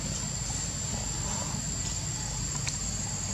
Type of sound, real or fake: real